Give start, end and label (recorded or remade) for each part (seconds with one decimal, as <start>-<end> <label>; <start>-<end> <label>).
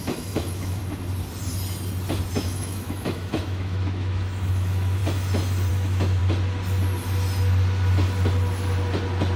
0.0-0.8 remade; 0.8-2.3 recorded; 2.3-5.0 remade; 5.0-5.7 recorded; 5.7-6.2 remade; 6.2-9.4 recorded